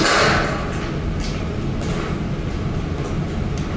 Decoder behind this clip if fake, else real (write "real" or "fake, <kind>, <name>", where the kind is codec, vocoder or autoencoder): real